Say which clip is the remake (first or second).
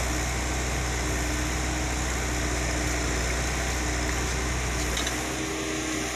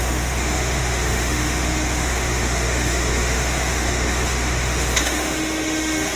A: second